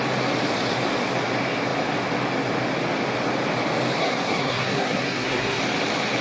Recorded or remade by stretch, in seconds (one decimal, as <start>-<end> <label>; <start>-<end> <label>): 0.0-4.0 recorded; 4.0-5.6 remade; 5.6-6.2 recorded